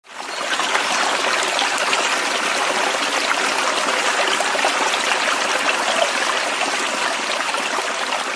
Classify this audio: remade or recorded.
recorded